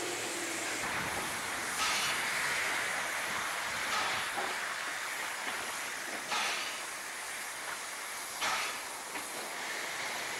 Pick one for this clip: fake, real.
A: real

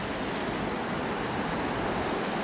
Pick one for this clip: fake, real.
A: real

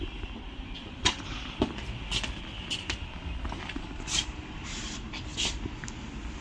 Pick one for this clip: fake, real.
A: real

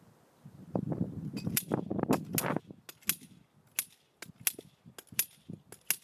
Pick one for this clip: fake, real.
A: real